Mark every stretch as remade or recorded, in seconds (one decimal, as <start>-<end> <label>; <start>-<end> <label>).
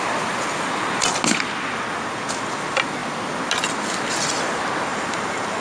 0.0-4.9 recorded; 4.9-5.6 remade